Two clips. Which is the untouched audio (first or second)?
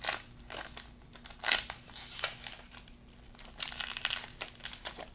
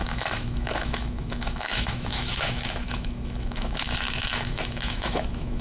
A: first